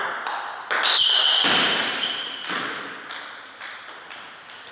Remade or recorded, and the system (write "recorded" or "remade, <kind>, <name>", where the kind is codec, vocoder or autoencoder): remade, vocoder, BigVGAN v2